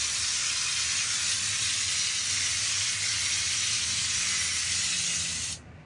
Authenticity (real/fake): real